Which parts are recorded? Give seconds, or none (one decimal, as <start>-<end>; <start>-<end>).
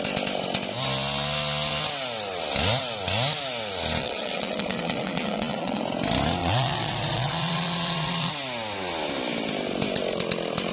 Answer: 0.0-4.0; 5.8-6.4; 8.3-10.7